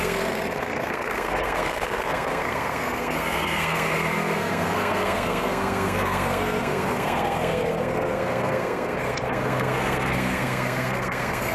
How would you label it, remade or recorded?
remade